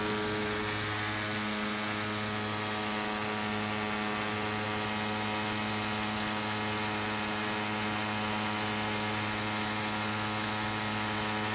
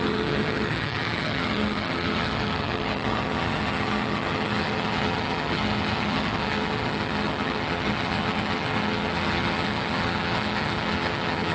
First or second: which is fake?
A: second